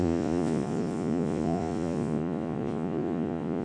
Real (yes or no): no